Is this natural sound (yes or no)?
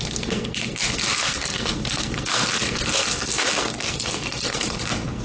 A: no